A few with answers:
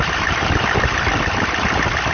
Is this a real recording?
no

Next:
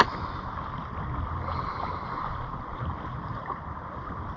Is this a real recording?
yes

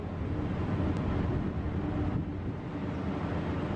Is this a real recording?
yes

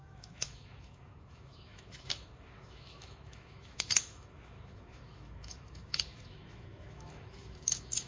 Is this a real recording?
no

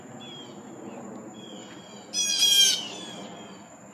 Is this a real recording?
yes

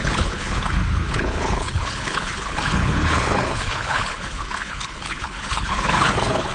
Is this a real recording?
no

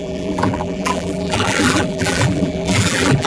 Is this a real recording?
no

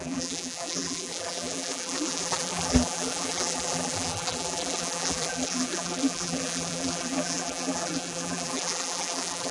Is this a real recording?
no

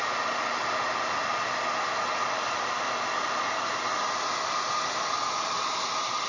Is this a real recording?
yes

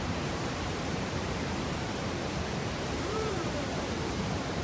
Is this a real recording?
no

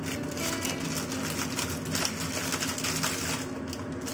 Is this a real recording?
yes